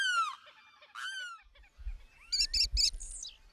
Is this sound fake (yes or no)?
no